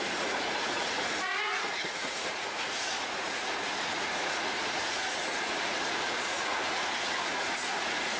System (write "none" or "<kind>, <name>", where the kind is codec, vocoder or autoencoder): vocoder, Vocos